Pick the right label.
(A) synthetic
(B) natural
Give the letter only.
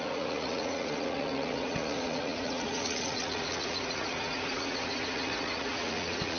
A